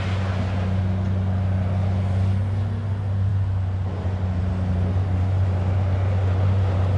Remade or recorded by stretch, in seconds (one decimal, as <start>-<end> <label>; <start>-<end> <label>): 0.0-7.0 recorded